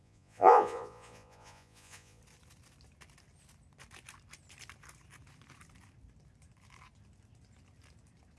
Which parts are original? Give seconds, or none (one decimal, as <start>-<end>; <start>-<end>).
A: 2.2-8.4